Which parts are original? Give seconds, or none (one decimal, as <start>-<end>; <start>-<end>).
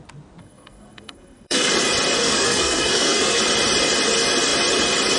0.0-0.4; 1.7-2.2; 3.4-5.2